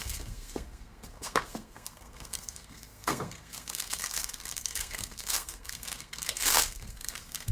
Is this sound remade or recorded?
remade